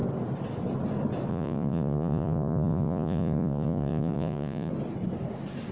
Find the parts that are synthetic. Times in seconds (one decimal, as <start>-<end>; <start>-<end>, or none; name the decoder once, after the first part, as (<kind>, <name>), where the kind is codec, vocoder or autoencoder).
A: 1.3-4.7 (vocoder, Vocos)